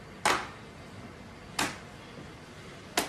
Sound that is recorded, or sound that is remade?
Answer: recorded